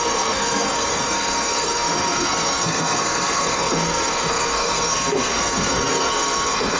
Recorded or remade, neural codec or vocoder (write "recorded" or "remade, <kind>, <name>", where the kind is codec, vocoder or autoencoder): remade, codec, SNAC